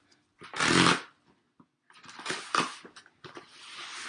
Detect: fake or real real